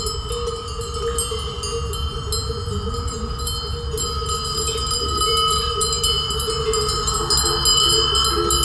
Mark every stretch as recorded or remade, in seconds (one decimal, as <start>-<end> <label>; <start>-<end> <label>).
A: 0.0-8.6 recorded